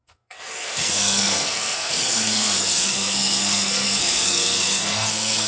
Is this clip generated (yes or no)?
yes